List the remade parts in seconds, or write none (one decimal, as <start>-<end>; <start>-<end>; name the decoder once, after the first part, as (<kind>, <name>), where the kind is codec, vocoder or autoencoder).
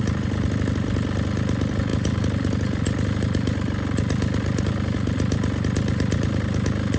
none